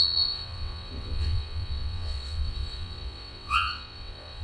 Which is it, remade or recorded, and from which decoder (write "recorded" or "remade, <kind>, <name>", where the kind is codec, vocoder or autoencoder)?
remade, vocoder, WaveNeXt